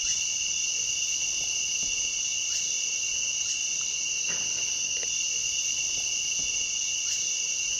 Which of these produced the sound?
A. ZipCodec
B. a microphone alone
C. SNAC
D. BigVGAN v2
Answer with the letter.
D